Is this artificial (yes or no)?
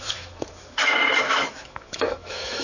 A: yes